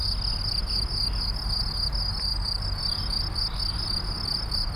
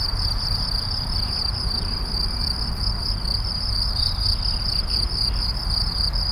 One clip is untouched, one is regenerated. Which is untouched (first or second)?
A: first